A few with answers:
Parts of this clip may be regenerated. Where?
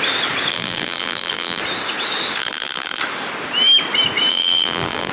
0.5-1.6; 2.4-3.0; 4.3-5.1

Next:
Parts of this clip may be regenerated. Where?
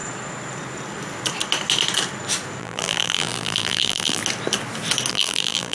2.6-4.2; 5.1-5.7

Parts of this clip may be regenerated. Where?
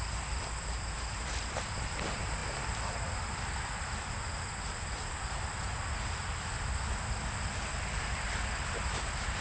none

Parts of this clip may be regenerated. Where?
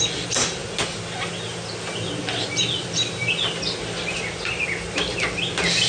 none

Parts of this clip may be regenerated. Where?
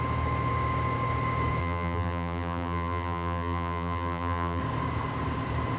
1.6-4.6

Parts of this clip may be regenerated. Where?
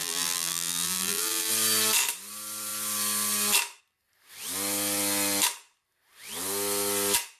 0.0-1.5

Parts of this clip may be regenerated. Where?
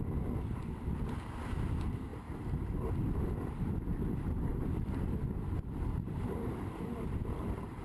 2.1-2.9; 5.9-6.8